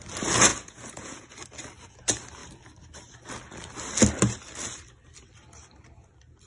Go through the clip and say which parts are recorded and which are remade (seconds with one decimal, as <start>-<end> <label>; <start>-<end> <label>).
0.0-0.5 recorded; 0.5-1.3 remade; 1.3-6.5 recorded